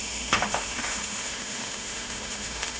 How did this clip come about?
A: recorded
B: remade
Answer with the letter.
B